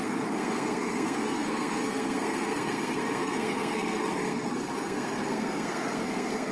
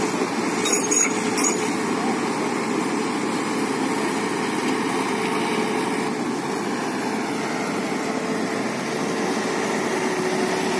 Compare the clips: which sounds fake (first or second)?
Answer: first